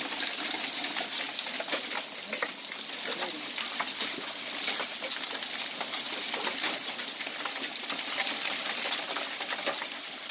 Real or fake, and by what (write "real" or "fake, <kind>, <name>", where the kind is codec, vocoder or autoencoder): real